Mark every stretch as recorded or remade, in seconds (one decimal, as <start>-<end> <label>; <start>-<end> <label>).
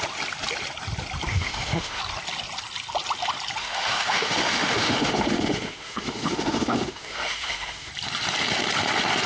0.0-1.3 recorded; 1.3-2.0 remade; 2.0-3.6 recorded; 3.6-7.9 remade; 7.9-9.3 recorded